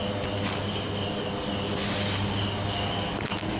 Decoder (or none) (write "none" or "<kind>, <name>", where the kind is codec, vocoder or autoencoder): none